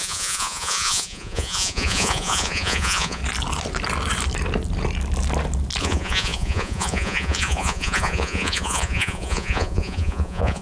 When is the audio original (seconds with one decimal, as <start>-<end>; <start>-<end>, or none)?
3.2-5.8